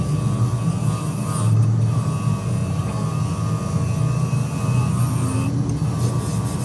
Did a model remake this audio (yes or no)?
no